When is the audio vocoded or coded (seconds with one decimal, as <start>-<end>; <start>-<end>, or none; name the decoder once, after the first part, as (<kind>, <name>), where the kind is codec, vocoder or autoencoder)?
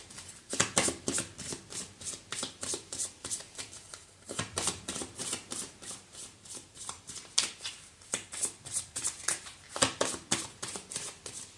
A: 0.0-9.5 (vocoder, BigVGAN v2); 10.4-11.6